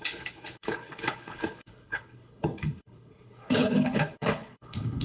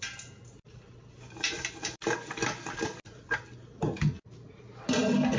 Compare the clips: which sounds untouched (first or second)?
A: second